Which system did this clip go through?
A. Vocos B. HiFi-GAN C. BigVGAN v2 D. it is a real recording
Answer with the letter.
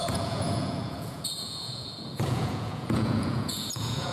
A